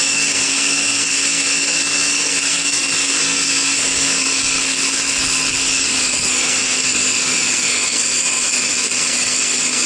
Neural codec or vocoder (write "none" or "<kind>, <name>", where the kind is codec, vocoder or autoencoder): codec, SNAC